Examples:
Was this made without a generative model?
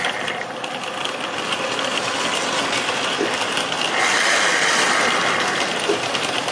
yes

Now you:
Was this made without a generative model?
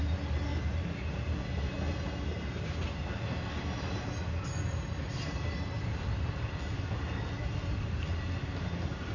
yes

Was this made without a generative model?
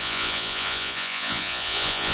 no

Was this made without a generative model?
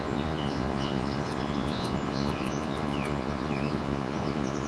no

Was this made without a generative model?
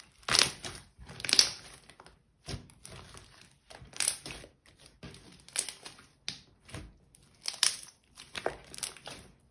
yes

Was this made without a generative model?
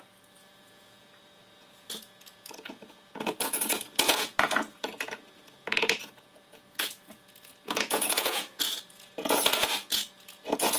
no